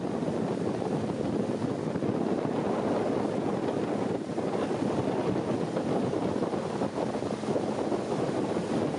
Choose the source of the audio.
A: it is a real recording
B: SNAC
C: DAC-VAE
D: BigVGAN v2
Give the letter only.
A